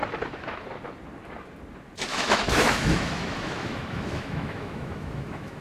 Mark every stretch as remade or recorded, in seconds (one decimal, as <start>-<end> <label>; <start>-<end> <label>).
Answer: 0.0-2.1 recorded; 2.1-5.6 remade